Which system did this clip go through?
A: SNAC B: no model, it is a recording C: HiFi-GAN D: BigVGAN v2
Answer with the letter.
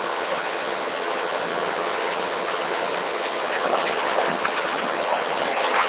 C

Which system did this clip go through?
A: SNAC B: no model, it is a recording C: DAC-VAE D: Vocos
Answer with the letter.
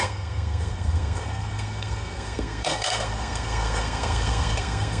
A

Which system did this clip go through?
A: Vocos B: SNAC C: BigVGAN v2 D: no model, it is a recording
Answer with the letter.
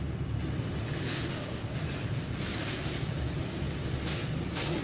D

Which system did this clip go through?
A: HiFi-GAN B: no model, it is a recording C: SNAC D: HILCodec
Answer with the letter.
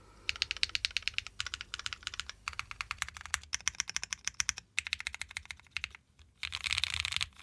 B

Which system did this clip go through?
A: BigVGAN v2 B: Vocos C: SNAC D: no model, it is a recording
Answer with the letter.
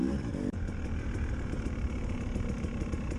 A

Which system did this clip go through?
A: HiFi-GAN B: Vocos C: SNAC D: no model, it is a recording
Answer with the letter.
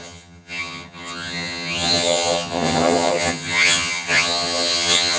A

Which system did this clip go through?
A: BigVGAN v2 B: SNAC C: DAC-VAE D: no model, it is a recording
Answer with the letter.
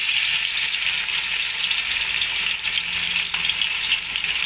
D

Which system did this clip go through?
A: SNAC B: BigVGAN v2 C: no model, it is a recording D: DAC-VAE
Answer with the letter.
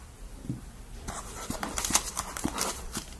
B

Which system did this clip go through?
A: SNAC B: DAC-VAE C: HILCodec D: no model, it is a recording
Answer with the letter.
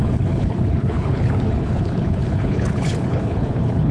C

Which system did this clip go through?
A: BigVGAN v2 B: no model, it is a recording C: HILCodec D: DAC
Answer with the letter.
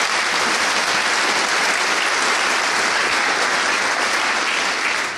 B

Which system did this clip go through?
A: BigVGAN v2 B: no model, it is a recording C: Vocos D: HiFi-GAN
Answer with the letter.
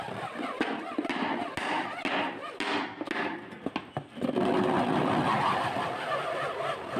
B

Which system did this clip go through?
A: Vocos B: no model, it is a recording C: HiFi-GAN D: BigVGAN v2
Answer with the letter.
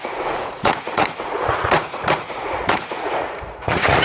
A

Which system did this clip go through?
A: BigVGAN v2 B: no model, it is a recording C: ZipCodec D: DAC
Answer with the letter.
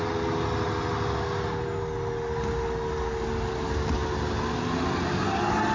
B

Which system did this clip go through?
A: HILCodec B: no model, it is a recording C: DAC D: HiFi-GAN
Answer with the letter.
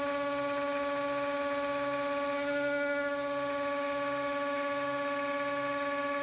B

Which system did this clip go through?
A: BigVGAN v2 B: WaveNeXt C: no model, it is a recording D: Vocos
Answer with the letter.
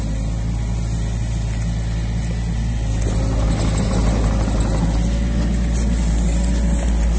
C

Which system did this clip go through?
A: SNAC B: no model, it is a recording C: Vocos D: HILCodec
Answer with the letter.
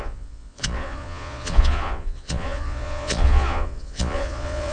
C